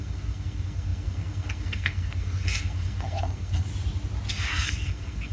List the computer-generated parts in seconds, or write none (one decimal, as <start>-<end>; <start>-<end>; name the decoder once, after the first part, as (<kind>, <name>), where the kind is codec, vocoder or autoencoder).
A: 0.0-3.7 (codec, SNAC); 4.3-5.3